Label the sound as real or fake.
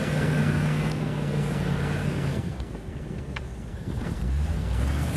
fake